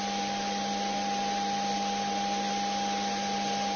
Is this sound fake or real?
real